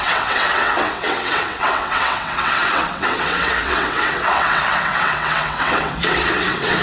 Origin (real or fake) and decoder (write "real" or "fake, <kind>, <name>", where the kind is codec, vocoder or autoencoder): fake, vocoder, WaveNeXt